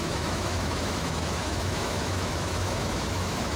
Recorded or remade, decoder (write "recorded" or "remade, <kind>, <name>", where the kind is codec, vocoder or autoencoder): remade, autoencoder, DAC-VAE